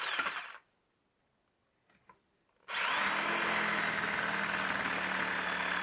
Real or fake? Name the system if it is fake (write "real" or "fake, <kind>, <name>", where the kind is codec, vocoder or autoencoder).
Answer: real